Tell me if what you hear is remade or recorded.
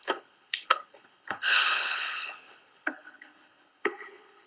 remade